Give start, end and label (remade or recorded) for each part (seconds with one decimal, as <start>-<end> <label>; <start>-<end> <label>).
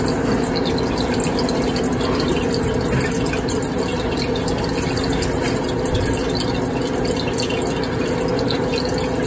0.0-9.3 recorded